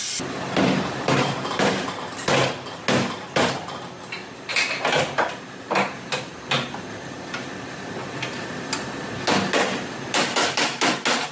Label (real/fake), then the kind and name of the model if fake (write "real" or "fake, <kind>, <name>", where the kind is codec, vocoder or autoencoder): real